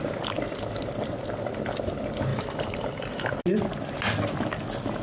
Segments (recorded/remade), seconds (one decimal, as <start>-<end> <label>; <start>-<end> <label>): 0.0-2.3 recorded; 2.3-3.3 remade; 3.3-5.0 recorded

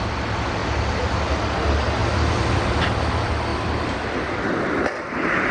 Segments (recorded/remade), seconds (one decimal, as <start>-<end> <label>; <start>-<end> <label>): 0.0-2.0 recorded; 2.0-2.6 remade; 2.6-3.5 recorded; 3.5-4.1 remade; 4.1-5.5 recorded